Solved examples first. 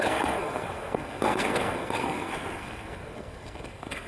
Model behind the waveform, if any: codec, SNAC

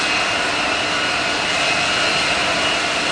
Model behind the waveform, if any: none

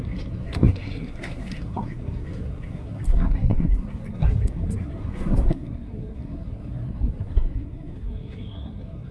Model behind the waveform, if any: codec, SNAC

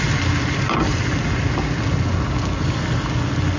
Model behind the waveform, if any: none